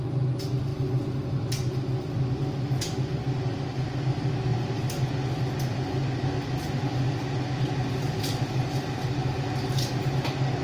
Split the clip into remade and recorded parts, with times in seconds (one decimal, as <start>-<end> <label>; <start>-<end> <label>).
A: 0.0-4.5 recorded; 4.5-5.1 remade; 5.1-10.6 recorded

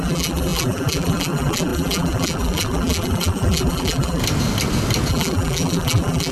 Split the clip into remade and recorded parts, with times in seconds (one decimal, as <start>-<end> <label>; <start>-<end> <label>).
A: 0.0-4.2 remade; 4.2-5.1 recorded; 5.1-6.3 remade

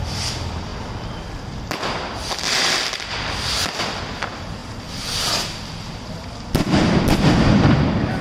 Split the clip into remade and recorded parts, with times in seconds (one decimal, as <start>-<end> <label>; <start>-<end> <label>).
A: 0.0-8.2 remade

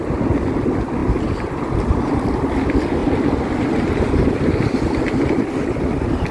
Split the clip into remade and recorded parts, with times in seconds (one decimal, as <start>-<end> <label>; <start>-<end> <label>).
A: 0.0-6.3 recorded

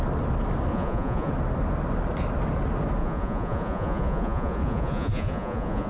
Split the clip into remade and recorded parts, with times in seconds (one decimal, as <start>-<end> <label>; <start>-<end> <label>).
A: 0.0-0.7 recorded; 0.7-1.3 remade; 1.3-3.0 recorded; 3.0-5.9 remade

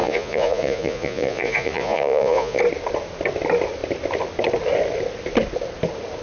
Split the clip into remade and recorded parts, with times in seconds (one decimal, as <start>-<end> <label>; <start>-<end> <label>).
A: 0.0-2.6 remade; 2.6-6.2 recorded

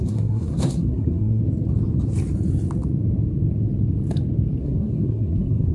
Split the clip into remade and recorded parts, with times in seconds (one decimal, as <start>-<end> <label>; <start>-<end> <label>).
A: 0.0-1.4 remade; 1.4-4.6 recorded; 4.6-5.7 remade

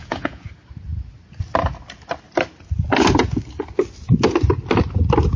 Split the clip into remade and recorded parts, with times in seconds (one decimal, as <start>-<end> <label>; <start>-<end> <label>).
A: 0.0-0.5 remade; 0.5-5.4 recorded